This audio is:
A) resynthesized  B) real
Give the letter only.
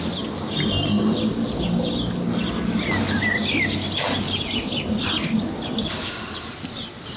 B